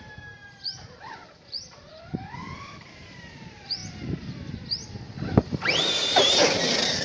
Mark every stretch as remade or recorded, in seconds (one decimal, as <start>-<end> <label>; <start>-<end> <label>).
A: 0.0-1.9 remade; 1.9-2.8 recorded; 2.8-3.8 remade; 3.8-5.4 recorded; 5.4-7.0 remade